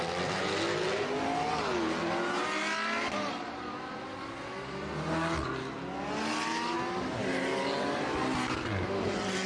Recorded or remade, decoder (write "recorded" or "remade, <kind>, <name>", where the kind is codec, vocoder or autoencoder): recorded